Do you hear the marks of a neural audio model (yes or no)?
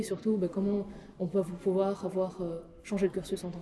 no